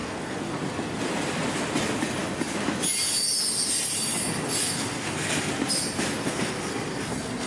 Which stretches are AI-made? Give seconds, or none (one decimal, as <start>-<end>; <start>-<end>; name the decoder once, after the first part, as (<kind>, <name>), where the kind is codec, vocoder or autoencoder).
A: 0.0-0.6 (codec, SNAC); 4.6-5.5; 6.2-7.5